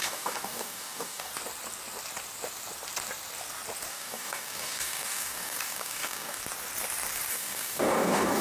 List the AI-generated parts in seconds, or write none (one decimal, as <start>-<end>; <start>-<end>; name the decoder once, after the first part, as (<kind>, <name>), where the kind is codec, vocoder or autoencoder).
0.0-1.3 (codec, DAC); 3.9-6.4; 7.3-8.4